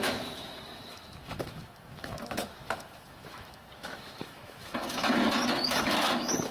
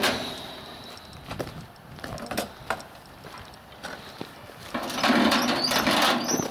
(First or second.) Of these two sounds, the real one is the second